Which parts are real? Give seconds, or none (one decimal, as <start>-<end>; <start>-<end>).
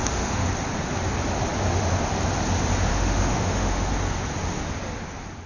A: 0.5-2.9; 3.9-5.5